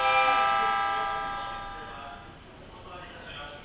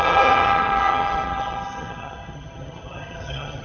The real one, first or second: first